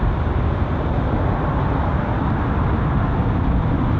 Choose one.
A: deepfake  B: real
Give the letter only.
B